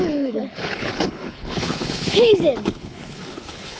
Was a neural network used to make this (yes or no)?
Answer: yes